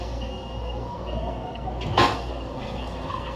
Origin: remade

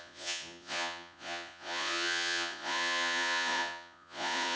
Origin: remade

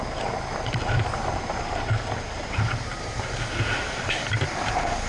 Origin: remade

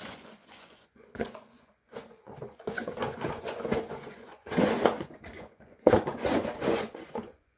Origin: remade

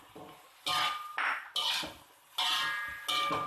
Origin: recorded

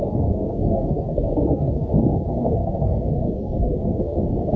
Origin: remade